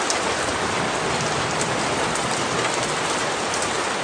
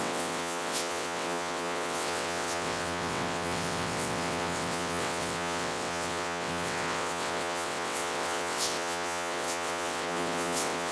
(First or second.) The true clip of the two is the first